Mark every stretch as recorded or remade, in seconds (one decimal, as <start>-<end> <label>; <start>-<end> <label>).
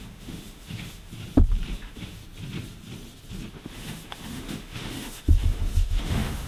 0.0-1.1 remade; 1.1-1.7 recorded; 1.7-2.2 remade; 2.2-3.5 recorded; 3.5-6.5 remade